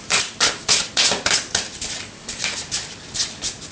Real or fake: real